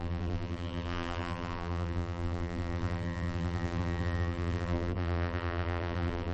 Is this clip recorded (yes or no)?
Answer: no